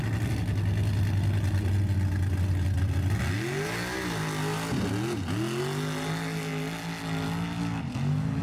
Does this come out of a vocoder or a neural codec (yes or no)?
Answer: no